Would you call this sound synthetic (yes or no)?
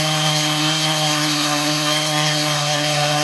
yes